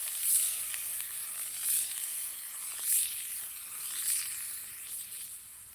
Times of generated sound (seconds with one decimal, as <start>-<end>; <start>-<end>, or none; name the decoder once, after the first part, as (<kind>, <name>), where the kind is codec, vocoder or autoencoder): 0.0-1.2 (codec, SNAC); 1.9-2.3